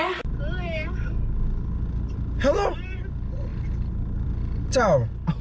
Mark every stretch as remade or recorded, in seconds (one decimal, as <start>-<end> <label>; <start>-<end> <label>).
0.0-5.4 recorded